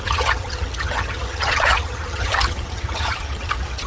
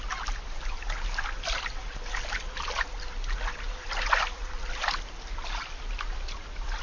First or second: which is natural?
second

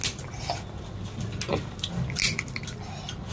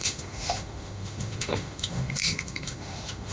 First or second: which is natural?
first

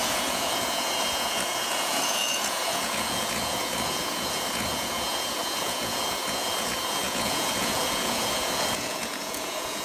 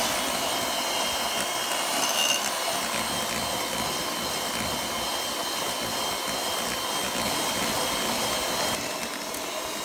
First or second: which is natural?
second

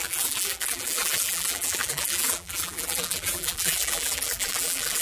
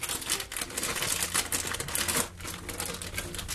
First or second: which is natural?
second